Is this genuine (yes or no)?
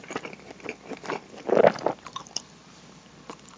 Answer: no